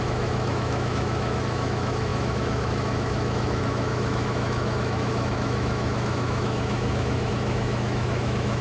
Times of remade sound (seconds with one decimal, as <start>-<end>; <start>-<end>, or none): 0.0-8.6